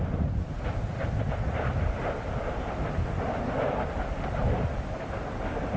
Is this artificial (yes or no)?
no